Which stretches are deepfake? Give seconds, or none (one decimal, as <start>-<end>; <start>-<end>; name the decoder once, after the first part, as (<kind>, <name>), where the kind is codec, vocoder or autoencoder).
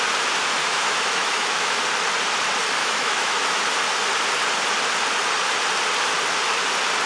0.6-1.8 (autoencoder, DAC-VAE); 2.8-3.6